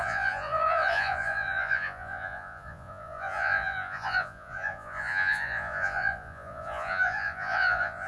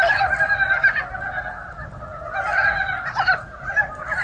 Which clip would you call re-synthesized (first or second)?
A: first